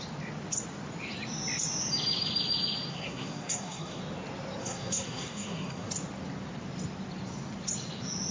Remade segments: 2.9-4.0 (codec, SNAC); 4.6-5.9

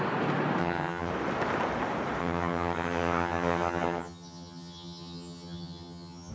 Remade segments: 0.6-1.1 (vocoder, HiFi-GAN); 2.2-6.3